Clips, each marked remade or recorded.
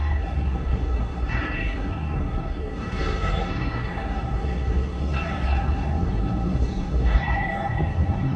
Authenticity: remade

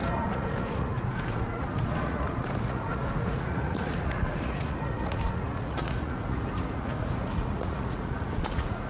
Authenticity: remade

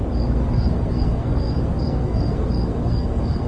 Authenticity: remade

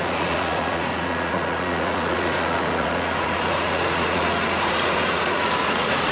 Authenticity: remade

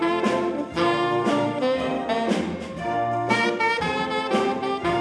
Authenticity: remade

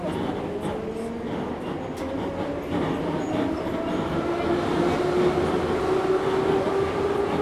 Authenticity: recorded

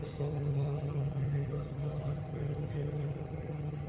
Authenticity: remade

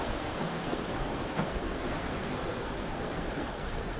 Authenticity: remade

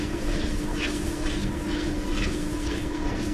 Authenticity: remade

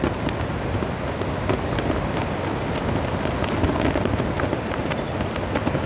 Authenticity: recorded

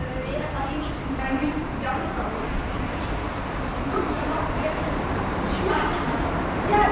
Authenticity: remade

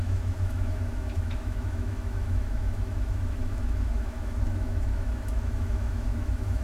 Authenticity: remade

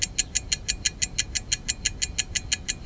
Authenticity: recorded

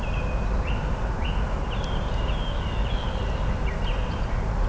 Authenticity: recorded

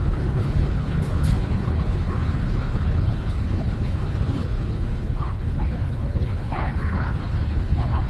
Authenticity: remade